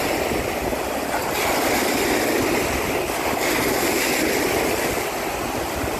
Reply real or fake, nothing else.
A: real